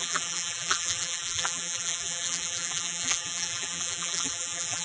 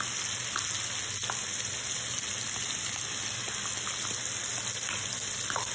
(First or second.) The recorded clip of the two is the second